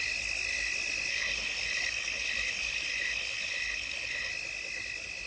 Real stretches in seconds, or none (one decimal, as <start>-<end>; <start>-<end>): 0.0-1.1; 4.3-5.3